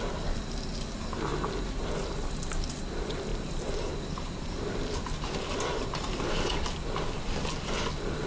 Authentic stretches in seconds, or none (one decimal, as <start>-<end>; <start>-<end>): 0.0-8.3